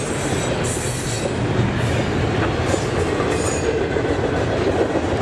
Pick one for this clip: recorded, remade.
recorded